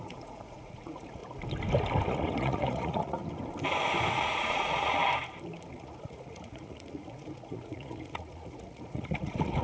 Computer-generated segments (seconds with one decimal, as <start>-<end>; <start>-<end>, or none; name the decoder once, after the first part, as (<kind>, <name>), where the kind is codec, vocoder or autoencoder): 0.0-1.2 (vocoder, Vocos); 2.1-3.2; 4.1-5.0; 5.8-9.6